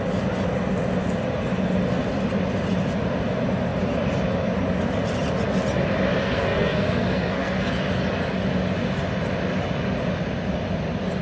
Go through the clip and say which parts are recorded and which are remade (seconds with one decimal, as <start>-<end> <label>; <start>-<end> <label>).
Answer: 0.0-6.2 recorded; 6.2-7.7 remade; 7.7-11.2 recorded